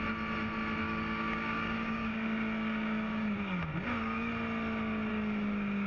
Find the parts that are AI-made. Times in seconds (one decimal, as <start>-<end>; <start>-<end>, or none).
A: 0.8-4.3; 5.1-5.9